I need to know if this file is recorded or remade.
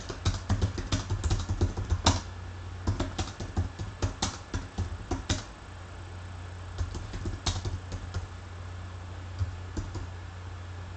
recorded